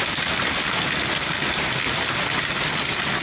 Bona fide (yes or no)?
yes